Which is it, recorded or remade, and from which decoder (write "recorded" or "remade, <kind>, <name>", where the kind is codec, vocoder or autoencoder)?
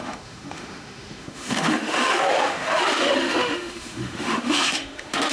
remade, autoencoder, DAC-VAE